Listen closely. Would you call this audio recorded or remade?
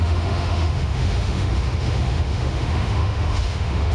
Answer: remade